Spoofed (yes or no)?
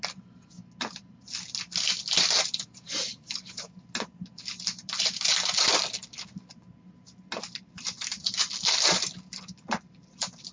no